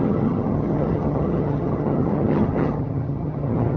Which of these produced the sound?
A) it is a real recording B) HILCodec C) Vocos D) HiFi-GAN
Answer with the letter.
D